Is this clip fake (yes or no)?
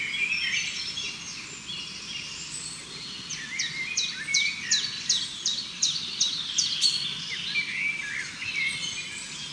no